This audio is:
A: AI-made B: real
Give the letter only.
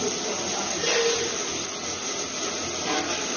B